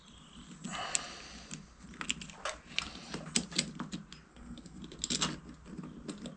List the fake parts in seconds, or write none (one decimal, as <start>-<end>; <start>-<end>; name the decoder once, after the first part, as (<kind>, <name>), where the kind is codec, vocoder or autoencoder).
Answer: 4.3-4.8 (codec, SNAC)